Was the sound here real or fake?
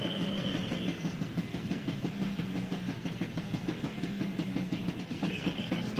fake